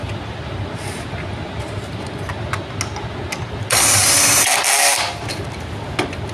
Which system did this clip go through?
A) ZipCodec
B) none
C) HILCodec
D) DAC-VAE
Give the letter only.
B